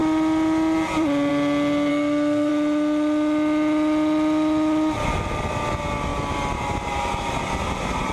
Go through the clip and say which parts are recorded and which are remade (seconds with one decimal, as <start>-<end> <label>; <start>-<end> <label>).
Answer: 0.0-1.9 recorded; 1.9-2.5 remade; 2.5-8.1 recorded